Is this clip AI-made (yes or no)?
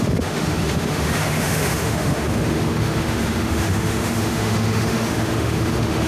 yes